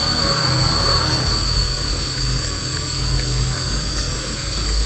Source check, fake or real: fake